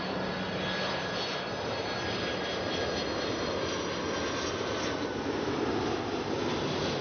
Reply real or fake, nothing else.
real